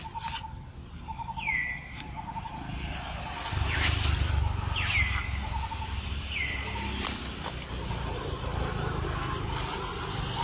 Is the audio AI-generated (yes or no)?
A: no